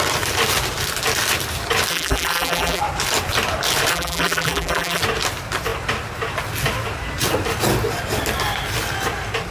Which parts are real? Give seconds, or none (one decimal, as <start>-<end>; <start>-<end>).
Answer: 0.0-1.9; 2.8-3.9; 5.0-9.5